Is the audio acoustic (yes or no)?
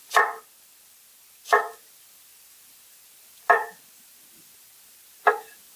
yes